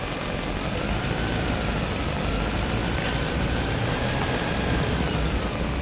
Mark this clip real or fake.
real